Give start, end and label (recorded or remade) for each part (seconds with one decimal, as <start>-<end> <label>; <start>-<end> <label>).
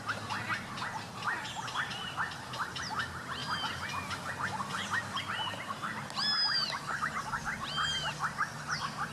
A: 0.0-9.1 recorded